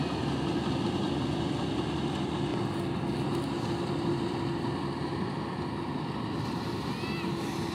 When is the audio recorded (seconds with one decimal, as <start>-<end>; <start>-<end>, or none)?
0.0-7.7